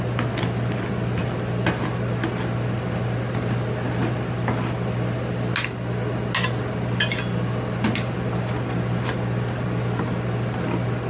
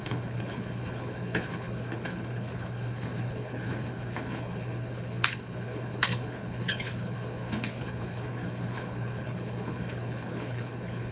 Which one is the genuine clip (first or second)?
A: first